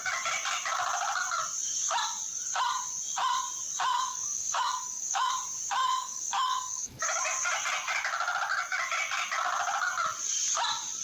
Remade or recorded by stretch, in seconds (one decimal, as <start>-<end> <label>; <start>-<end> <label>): 0.0-3.9 recorded; 3.9-5.3 remade; 5.3-5.8 recorded; 5.8-7.2 remade; 7.2-11.0 recorded